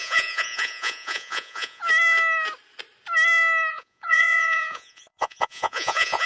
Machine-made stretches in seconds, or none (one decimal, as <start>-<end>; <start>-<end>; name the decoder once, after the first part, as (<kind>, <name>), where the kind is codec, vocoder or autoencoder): 0.0-1.8 (vocoder, Vocos); 3.7-6.3